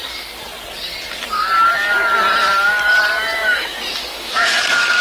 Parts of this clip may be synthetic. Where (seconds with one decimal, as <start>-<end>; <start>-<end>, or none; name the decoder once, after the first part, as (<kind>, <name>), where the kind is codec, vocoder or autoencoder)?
3.3-5.0 (autoencoder, DAC-VAE)